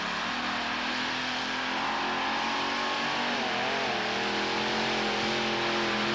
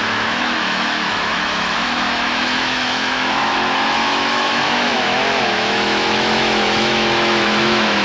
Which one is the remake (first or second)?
second